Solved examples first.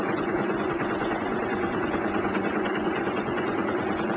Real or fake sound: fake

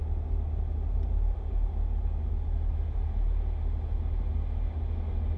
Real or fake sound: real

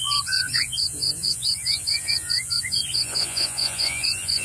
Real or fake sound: fake